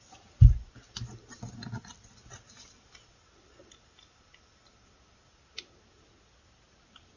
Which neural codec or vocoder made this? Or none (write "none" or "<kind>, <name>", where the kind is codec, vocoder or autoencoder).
none